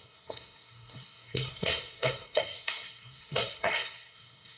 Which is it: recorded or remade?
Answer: remade